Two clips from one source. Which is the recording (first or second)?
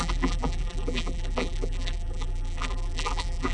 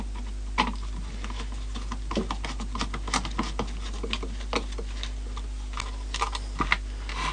second